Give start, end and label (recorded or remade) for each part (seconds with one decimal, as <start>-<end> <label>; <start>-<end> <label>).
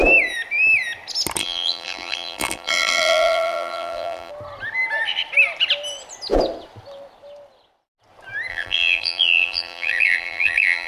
0.0-1.4 recorded; 1.4-4.3 remade; 4.3-8.5 recorded; 8.5-10.9 remade